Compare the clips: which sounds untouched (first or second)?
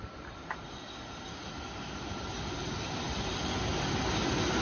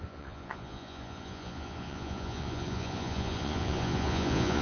first